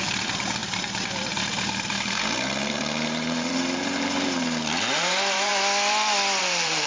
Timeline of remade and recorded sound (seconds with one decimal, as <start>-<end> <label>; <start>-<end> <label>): 0.0-5.5 remade; 5.5-6.4 recorded; 6.4-6.9 remade